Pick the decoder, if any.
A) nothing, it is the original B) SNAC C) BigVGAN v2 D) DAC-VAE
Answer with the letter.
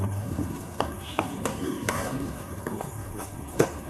B